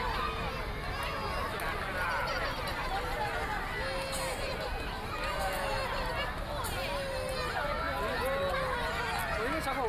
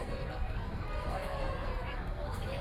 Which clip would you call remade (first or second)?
second